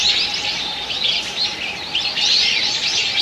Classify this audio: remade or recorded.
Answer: recorded